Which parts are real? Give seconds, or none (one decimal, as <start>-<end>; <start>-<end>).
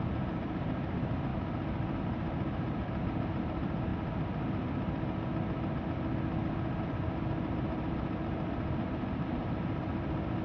1.3-2.0; 3.9-6.8